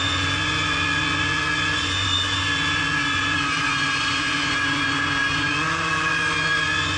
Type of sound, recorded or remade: remade